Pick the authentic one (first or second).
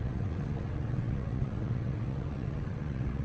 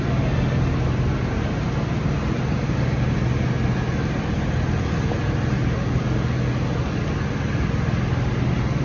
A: second